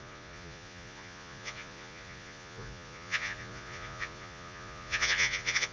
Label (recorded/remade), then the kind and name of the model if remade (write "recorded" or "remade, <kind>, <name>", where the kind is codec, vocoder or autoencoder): remade, vocoder, Vocos